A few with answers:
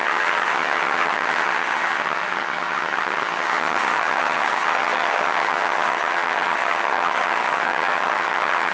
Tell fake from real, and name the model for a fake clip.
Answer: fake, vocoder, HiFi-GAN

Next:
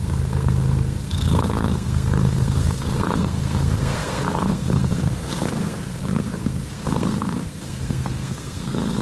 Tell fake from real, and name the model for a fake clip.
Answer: fake, codec, SNAC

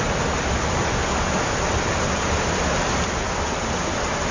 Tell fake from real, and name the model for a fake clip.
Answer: real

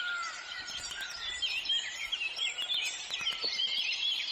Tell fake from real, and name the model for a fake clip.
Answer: fake, vocoder, BigVGAN v2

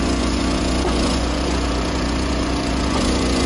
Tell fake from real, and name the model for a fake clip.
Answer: fake, vocoder, Vocos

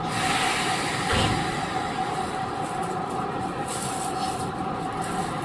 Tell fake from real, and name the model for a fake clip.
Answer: real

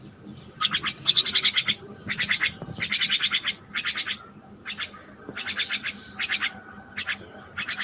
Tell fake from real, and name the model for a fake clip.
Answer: real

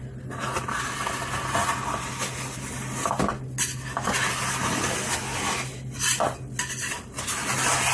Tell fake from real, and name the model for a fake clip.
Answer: real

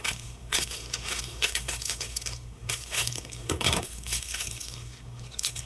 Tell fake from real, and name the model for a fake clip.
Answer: fake, codec, SNAC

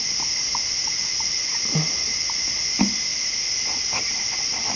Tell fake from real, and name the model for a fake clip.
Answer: real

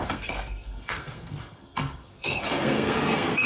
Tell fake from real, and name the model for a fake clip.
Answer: fake, codec, SNAC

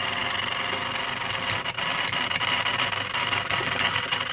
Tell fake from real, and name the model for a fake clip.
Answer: real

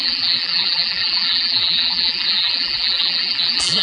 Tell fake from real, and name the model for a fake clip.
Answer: fake, vocoder, BigVGAN v2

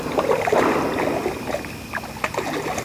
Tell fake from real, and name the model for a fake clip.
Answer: real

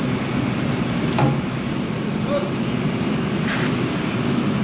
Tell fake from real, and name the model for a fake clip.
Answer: real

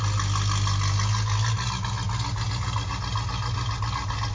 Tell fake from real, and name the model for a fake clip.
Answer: real